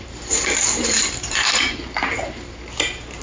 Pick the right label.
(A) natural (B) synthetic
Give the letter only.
B